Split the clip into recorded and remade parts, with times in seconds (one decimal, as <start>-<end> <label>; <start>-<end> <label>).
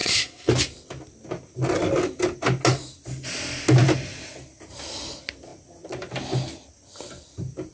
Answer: 0.0-0.5 remade; 0.5-7.7 recorded